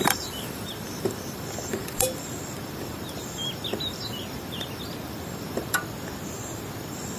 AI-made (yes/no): yes